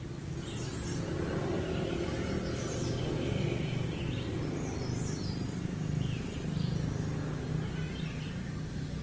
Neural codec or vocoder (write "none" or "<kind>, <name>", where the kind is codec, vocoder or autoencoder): none